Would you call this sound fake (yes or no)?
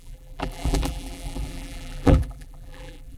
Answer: yes